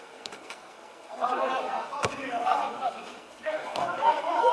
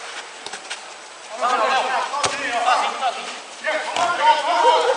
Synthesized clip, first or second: first